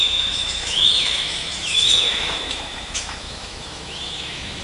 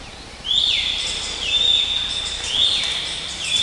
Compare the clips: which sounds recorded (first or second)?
second